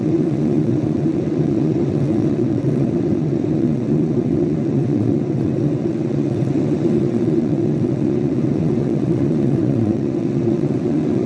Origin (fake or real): fake